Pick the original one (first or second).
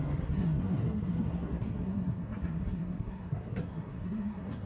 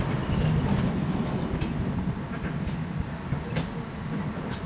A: second